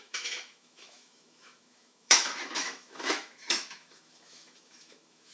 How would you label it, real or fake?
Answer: fake